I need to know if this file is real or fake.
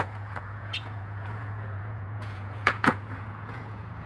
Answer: fake